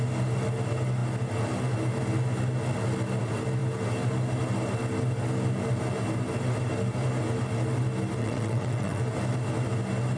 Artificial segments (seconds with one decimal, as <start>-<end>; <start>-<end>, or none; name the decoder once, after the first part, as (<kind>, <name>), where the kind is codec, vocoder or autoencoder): 8.2-9.0 (vocoder, WaveNeXt)

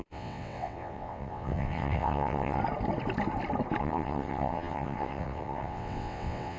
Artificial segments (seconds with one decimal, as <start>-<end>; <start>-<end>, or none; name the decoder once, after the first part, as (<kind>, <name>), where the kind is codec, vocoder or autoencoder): 0.0-2.6 (vocoder, WaveNeXt); 3.8-6.6

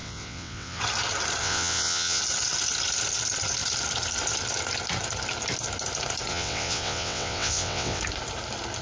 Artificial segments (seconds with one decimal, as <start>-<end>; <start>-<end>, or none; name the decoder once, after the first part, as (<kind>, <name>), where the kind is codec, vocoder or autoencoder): 0.0-0.8 (vocoder, WaveNeXt); 1.4-2.2; 6.3-8.0

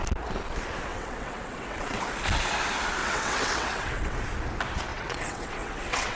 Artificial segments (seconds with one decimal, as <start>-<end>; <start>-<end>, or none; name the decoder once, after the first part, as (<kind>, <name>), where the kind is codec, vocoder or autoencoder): 0.9-2.1 (vocoder, WaveNeXt); 3.0-4.2; 4.9-6.2

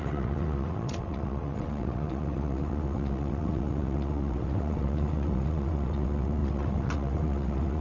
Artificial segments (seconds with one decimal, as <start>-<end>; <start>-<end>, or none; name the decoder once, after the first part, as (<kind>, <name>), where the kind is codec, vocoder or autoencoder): 0.0-7.8 (vocoder, WaveNeXt)